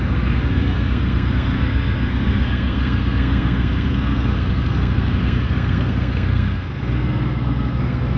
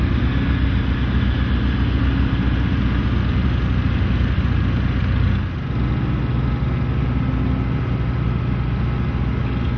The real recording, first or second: second